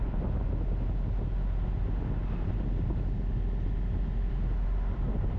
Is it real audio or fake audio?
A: real